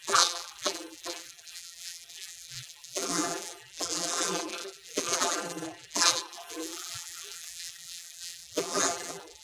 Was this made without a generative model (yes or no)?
no